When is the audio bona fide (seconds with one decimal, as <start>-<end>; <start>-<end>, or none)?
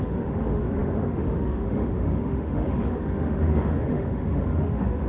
none